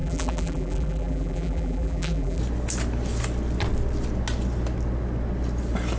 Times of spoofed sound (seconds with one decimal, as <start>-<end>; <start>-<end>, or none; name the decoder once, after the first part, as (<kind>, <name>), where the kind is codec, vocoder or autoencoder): 0.0-2.4 (vocoder, BigVGAN v2)